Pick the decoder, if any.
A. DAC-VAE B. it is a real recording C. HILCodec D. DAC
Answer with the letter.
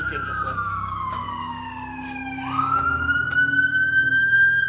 D